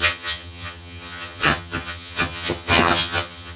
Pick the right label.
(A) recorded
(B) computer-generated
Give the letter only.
B